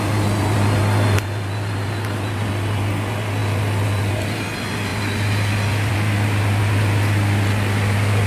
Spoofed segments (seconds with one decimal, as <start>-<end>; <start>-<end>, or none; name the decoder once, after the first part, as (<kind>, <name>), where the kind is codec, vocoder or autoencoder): none